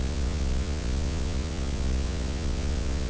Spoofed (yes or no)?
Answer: yes